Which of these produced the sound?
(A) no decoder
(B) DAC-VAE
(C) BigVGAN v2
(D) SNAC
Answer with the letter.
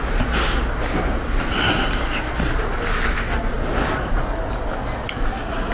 A